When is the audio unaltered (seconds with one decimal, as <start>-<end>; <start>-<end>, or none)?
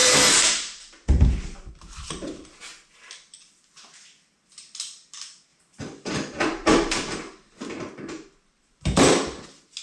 1.7-5.5; 9.0-9.8